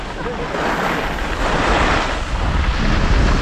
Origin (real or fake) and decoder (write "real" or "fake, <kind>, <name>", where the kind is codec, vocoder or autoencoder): real